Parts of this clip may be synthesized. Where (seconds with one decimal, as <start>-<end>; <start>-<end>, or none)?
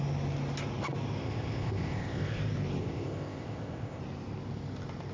1.2-2.4; 2.8-4.0